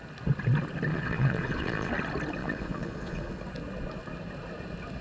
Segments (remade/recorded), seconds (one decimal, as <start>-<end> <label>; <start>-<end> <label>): 0.0-0.9 recorded; 0.9-1.9 remade; 1.9-2.4 recorded; 2.4-3.3 remade; 3.3-5.0 recorded